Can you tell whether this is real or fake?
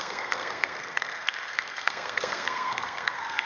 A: fake